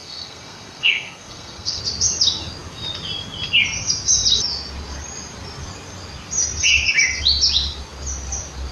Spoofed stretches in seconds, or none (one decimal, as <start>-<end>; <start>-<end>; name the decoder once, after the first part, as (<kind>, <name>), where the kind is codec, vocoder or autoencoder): 0.0-1.8 (codec, SNAC)